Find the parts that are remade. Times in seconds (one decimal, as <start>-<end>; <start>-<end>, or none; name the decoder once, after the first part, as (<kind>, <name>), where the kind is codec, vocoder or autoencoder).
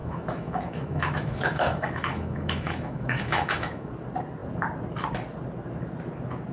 0.0-3.9 (autoencoder, DAC-VAE)